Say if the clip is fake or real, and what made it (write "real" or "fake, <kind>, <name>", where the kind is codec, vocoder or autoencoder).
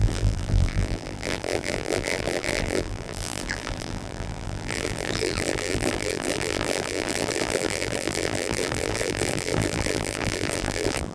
fake, vocoder, BigVGAN v2